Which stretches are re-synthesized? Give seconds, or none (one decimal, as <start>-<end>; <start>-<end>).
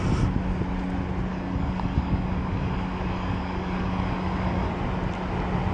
1.3-4.7